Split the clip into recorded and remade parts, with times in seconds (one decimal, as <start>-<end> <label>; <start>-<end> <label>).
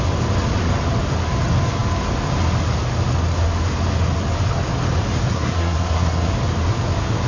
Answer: 0.0-5.3 recorded; 5.3-6.3 remade; 6.3-7.3 recorded